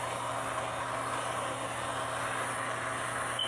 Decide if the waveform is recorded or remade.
recorded